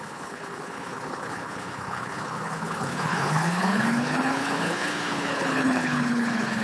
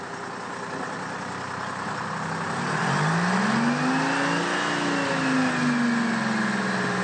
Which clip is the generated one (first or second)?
first